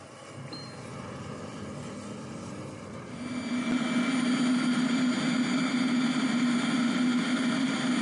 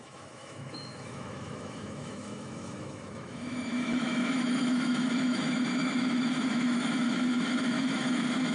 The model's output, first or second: second